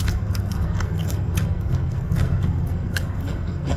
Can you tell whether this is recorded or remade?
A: remade